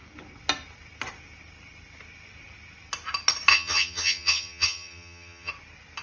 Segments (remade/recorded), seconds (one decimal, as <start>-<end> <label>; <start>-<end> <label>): 0.0-3.5 recorded; 3.5-5.5 remade; 5.5-6.0 recorded